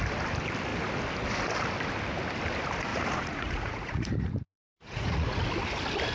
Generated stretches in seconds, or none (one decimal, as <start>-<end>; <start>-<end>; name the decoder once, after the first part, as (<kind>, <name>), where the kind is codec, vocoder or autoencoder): 2.9-5.4 (vocoder, Vocos)